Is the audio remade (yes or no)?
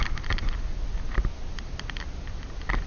no